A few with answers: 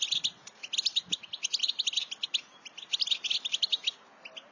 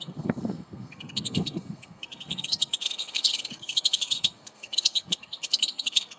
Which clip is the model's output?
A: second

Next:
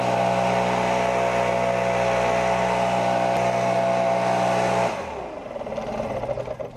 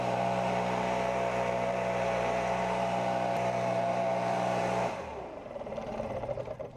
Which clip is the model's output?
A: second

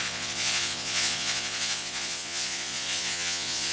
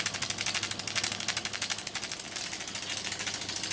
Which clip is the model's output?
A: first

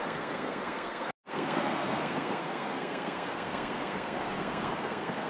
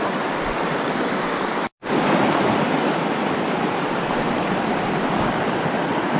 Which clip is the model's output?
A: first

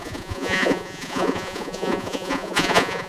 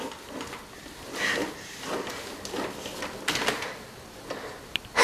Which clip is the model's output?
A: first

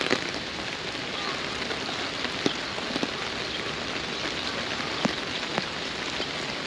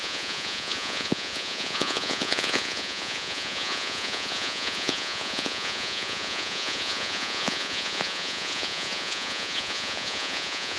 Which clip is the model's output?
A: second